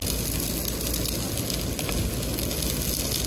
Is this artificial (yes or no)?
no